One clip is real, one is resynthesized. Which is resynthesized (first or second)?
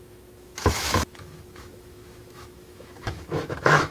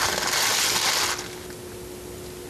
first